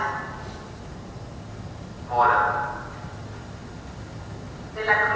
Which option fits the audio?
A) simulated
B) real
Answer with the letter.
B